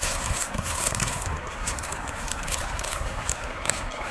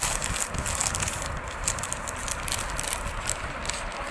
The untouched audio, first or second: second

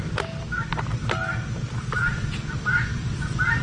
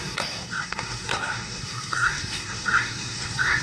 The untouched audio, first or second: first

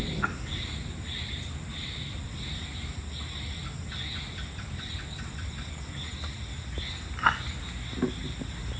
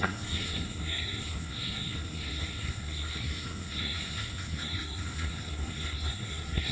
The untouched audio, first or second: first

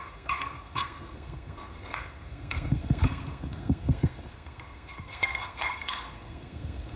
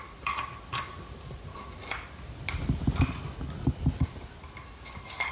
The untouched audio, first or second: second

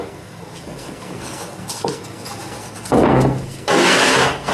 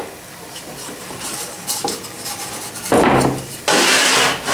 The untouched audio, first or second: second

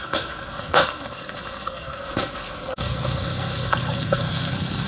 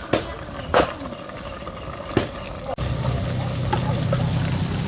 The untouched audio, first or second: second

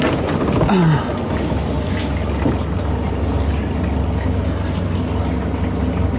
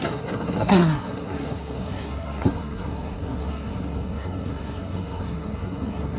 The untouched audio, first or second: first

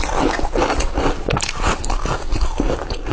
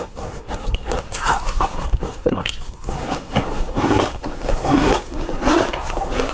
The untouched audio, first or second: first